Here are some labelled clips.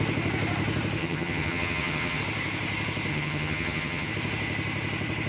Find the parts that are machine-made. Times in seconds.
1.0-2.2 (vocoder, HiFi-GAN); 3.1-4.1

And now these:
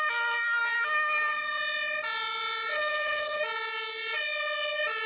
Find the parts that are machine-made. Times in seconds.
2.7-3.4 (vocoder, HiFi-GAN)

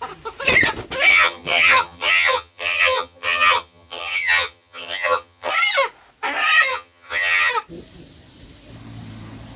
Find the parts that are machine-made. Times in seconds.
1.1-5.5 (vocoder, HiFi-GAN); 6.7-7.5